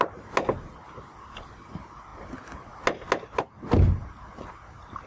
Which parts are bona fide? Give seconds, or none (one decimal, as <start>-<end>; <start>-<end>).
0.0-5.1